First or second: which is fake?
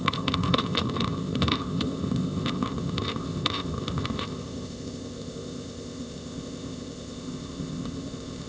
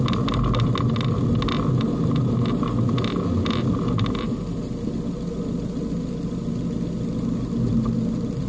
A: first